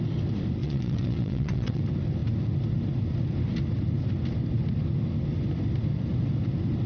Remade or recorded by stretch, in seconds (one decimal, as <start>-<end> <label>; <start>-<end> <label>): 0.0-0.6 recorded; 0.6-1.8 remade; 1.8-6.9 recorded